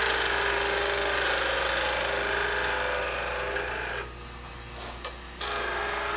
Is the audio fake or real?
real